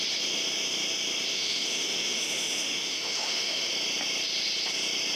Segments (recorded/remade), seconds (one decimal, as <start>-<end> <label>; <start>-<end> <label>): 0.0-1.3 recorded; 1.3-3.7 remade; 3.7-5.2 recorded